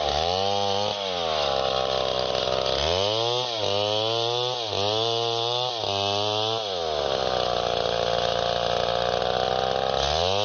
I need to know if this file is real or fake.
real